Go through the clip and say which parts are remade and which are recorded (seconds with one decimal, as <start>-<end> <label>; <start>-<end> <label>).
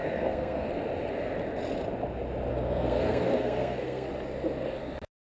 0.0-0.8 remade; 0.8-2.5 recorded; 2.5-4.1 remade; 4.1-5.3 recorded